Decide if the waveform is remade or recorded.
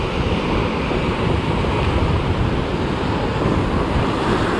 recorded